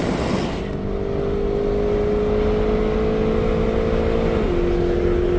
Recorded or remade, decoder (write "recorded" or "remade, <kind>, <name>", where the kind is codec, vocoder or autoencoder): recorded